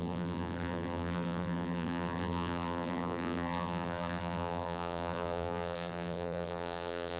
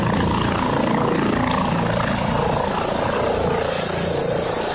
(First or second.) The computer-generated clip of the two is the first